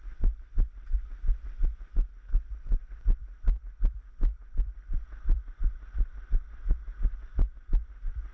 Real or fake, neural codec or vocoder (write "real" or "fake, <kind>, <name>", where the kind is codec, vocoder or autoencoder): real